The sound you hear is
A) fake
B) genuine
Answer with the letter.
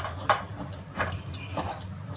A